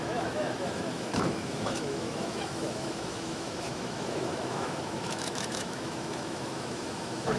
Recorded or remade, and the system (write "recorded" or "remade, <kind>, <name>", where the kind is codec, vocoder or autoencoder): remade, autoencoder, DAC-VAE